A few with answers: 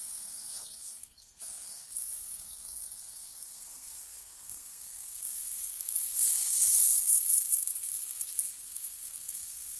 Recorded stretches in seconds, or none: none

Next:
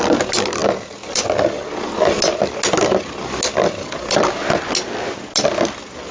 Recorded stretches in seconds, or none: 0.0-6.1

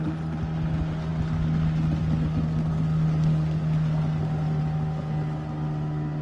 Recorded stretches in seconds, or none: 0.0-6.2

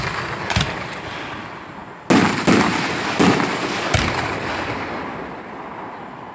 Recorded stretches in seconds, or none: 0.0-6.3